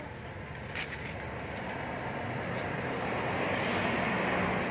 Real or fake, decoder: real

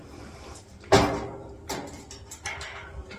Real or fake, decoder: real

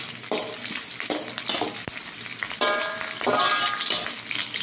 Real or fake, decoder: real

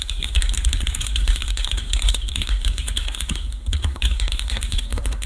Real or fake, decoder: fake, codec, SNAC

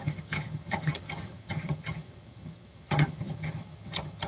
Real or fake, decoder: fake, vocoder, HiFi-GAN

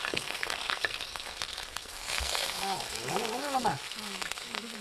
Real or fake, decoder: fake, codec, SNAC